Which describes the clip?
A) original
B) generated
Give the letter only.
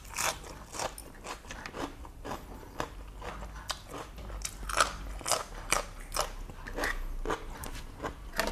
A